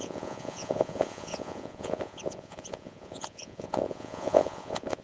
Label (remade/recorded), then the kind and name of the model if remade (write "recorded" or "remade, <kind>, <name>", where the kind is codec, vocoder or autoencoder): remade, vocoder, Vocos